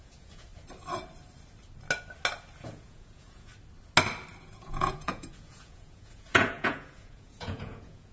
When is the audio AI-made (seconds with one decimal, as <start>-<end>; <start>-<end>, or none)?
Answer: 0.0-0.5; 2.6-3.5; 4.4-8.1